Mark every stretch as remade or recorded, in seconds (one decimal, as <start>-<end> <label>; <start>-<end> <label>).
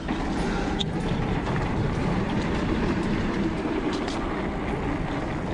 0.0-0.8 recorded; 0.8-4.1 remade; 4.1-5.5 recorded